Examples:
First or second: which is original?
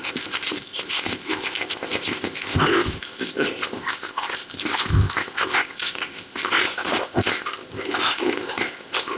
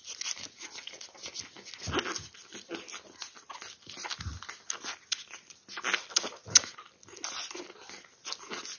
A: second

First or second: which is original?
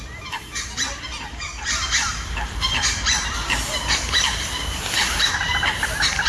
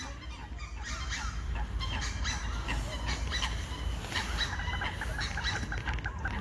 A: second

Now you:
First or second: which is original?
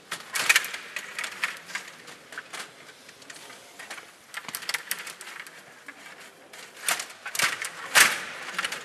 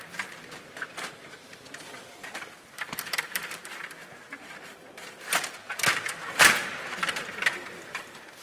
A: first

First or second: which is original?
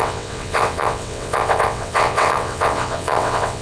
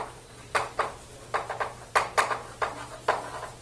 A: second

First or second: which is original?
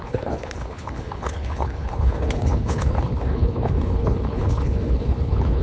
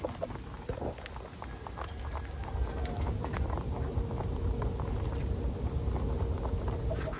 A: second